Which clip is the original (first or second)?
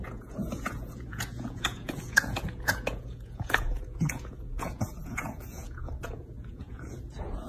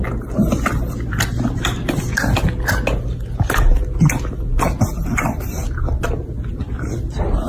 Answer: second